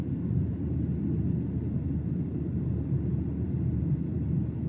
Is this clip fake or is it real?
real